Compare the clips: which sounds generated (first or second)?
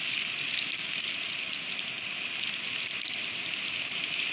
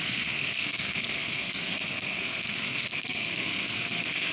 second